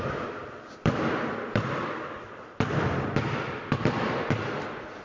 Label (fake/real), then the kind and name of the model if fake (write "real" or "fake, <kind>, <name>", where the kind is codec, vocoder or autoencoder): fake, vocoder, BigVGAN v2